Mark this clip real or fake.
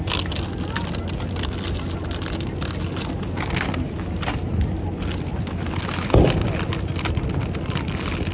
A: real